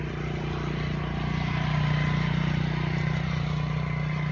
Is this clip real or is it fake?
real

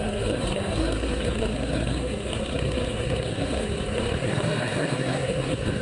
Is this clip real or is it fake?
fake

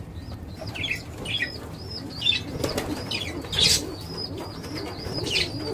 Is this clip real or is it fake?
real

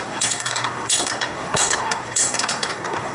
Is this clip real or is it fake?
fake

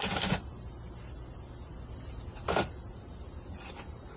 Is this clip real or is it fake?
real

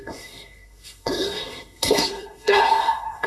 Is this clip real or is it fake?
fake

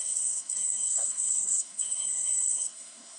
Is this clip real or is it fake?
fake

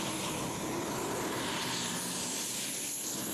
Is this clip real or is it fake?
real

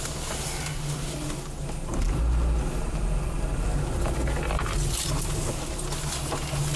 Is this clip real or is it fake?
real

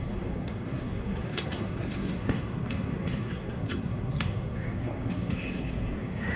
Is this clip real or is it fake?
fake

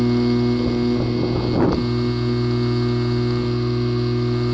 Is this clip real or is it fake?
real